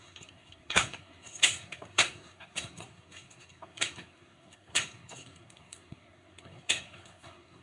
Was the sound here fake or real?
fake